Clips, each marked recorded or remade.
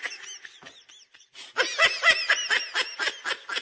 recorded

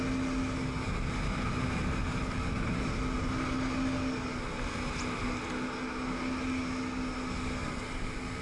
recorded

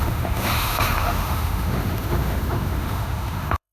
remade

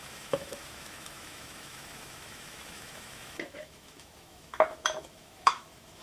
remade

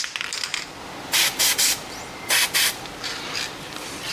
recorded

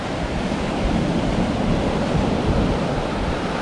recorded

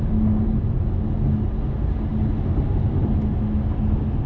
recorded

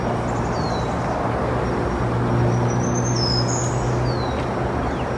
recorded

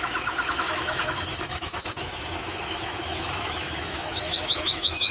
remade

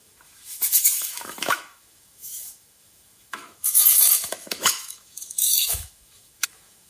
remade